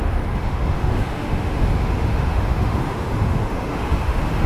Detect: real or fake fake